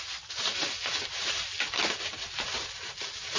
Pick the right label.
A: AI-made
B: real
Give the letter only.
B